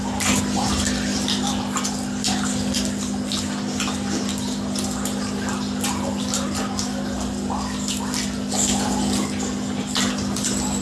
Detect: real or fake real